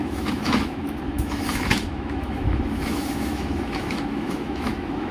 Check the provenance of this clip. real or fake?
fake